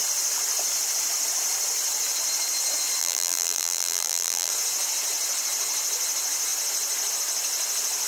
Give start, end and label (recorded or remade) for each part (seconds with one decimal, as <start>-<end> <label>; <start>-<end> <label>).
0.0-3.0 recorded; 3.0-4.5 remade; 4.5-8.1 recorded